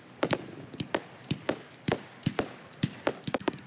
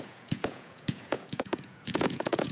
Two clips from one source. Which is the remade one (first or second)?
second